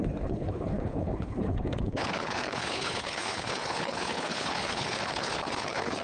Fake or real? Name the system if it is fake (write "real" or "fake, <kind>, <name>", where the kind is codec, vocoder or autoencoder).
fake, codec, HILCodec